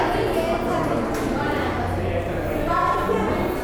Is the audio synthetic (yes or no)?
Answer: no